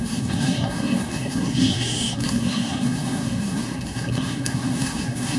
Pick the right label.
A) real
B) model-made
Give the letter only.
B